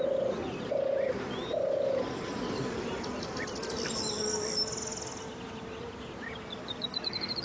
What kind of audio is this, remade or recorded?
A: recorded